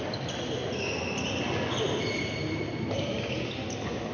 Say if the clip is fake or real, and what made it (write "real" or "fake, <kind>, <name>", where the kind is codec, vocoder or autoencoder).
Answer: real